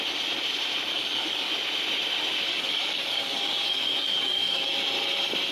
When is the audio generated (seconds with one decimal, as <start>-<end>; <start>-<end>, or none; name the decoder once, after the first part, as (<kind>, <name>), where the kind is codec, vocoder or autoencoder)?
0.9-1.5 (codec, DAC); 2.5-4.7